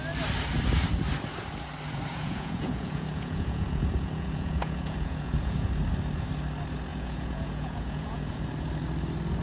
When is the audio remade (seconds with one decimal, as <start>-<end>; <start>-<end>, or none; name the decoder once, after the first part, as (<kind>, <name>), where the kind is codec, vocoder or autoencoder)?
2.1-5.7 (vocoder, Vocos); 6.9-8.4